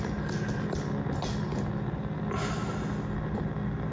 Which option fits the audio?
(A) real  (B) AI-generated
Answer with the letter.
A